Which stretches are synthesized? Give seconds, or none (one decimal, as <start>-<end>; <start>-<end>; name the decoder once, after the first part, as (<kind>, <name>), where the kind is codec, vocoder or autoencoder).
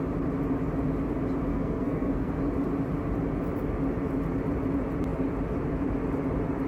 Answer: 1.5-2.4 (codec, SNAC)